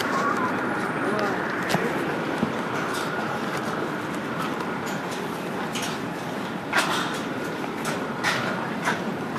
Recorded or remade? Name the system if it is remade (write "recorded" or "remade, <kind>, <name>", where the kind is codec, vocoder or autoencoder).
recorded